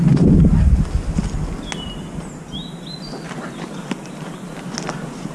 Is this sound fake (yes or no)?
no